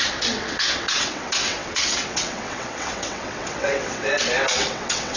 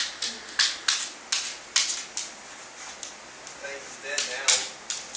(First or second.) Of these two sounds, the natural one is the second